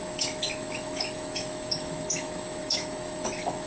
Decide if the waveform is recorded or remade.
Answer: remade